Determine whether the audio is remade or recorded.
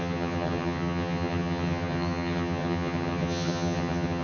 remade